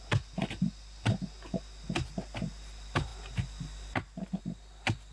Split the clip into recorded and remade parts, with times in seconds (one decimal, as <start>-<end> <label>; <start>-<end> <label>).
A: 0.0-5.1 recorded